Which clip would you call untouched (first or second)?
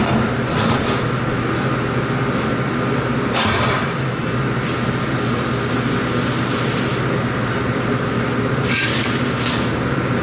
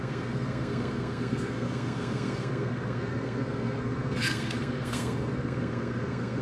first